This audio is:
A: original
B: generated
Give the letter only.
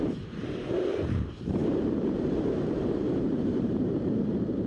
B